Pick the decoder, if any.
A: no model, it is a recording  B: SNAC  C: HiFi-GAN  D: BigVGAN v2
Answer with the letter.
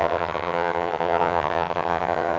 C